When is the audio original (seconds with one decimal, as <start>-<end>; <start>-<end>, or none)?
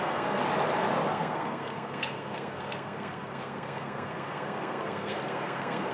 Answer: 0.4-1.1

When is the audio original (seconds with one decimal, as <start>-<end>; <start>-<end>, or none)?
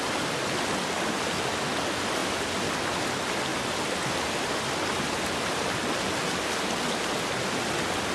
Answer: 0.0-8.1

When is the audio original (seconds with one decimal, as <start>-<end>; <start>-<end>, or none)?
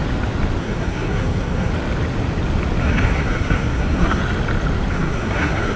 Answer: 0.0-0.6; 1.7-2.8; 4.2-4.9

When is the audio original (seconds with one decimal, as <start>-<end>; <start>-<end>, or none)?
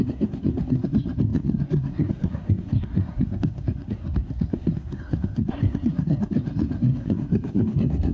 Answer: none